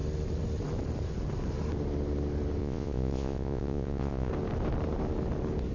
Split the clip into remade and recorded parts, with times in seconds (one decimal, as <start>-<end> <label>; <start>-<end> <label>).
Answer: 0.0-2.6 recorded; 2.6-4.3 remade; 4.3-5.7 recorded